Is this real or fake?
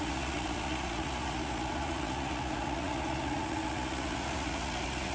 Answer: fake